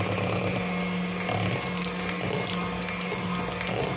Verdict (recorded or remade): recorded